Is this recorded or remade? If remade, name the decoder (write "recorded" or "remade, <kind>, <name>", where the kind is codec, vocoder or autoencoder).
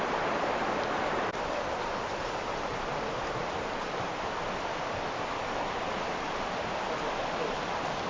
remade, vocoder, BigVGAN v2